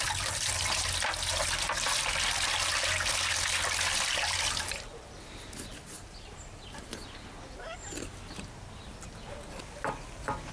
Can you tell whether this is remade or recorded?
recorded